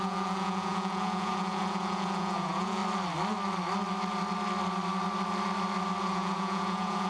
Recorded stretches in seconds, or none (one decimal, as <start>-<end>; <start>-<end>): 2.8-6.0